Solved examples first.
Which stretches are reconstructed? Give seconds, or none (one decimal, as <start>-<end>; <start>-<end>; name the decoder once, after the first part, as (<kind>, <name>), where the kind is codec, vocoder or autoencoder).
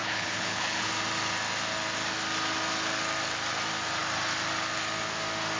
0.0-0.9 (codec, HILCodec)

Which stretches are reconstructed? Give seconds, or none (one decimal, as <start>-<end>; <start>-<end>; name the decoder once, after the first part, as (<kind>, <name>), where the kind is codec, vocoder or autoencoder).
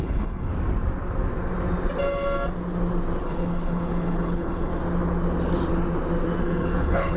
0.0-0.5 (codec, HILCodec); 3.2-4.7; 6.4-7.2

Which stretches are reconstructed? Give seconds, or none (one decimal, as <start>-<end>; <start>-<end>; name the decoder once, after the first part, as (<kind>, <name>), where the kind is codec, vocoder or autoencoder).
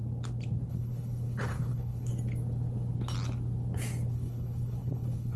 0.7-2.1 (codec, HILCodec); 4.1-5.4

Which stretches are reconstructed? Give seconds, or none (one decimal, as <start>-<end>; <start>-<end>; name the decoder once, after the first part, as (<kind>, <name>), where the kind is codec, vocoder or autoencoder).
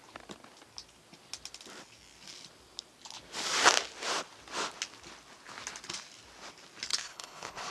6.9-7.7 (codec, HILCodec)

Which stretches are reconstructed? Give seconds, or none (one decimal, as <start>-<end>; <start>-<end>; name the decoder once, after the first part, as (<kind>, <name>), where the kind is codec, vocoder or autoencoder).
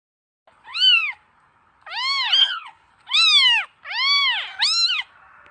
2.4-2.9 (codec, HILCodec)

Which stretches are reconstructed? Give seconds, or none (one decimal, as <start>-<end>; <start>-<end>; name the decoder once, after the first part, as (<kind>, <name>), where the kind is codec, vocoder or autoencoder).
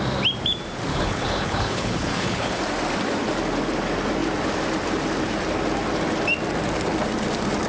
0.9-2.6 (codec, HILCodec)